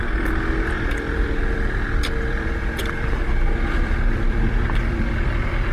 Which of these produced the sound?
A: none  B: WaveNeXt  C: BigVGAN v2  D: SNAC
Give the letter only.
C